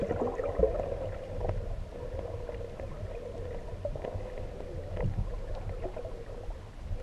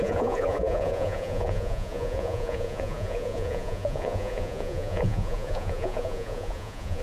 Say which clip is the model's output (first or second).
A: second